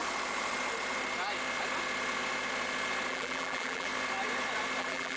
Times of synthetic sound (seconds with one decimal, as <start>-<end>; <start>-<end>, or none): 3.1-3.9; 4.8-5.2